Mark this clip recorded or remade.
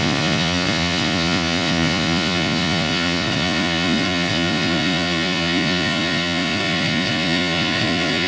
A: remade